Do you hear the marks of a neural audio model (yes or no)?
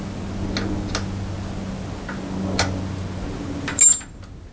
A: no